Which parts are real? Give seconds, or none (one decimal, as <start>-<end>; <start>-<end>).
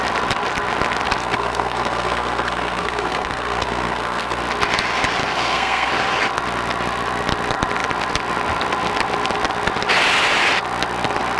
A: 0.0-1.2; 4.4-5.2; 5.9-11.4